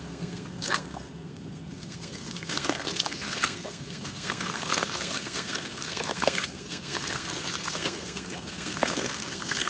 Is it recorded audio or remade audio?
remade